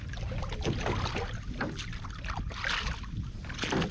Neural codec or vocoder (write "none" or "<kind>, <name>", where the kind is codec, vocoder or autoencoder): none